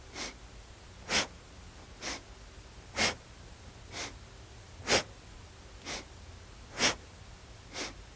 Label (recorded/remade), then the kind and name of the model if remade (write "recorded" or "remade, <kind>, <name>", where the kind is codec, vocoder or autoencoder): recorded